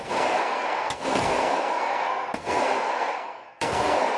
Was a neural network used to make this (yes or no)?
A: yes